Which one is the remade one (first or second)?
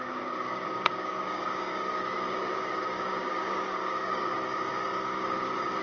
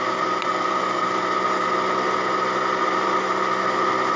first